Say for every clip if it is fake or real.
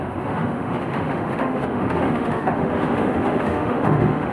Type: fake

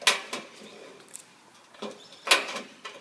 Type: real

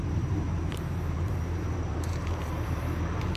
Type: fake